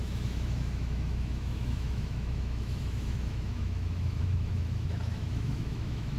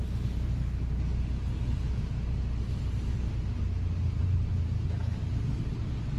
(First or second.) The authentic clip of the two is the second